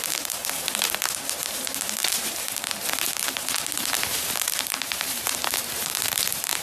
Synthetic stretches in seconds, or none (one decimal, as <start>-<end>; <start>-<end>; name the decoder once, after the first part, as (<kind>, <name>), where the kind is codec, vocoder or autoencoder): 0.0-0.4 (vocoder, BigVGAN v2); 1.4-6.6